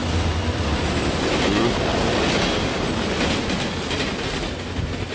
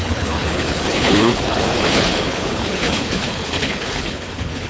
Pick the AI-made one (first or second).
second